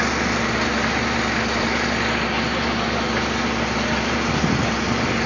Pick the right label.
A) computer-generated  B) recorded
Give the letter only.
B